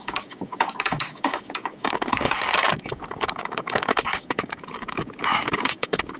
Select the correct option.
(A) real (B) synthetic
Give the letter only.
B